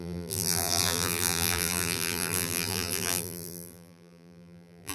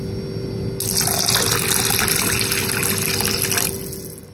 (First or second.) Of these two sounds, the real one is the second